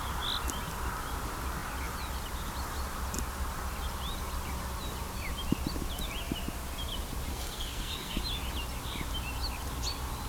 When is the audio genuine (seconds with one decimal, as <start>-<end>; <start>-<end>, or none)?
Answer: 0.0-7.3; 8.2-10.3